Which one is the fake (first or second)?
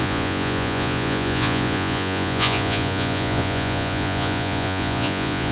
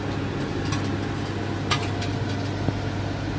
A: first